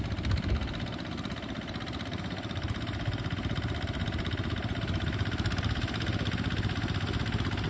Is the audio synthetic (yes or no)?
no